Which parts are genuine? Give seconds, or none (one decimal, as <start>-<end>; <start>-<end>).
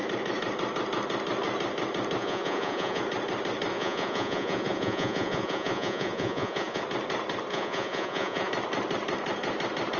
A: 0.0-2.2; 3.0-3.7; 6.8-7.5; 8.5-10.0